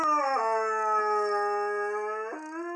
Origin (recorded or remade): recorded